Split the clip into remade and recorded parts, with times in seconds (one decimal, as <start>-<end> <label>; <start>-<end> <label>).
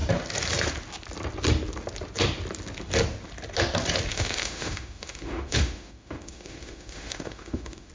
0.0-4.1 recorded; 4.1-7.9 remade